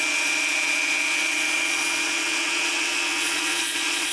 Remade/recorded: remade